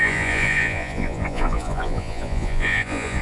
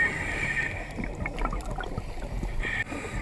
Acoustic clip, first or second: second